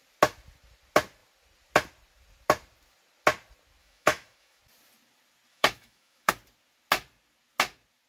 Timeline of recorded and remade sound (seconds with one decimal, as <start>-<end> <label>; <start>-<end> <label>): 0.0-3.8 recorded; 3.8-4.6 remade; 4.6-5.5 recorded; 5.5-6.3 remade; 6.3-8.1 recorded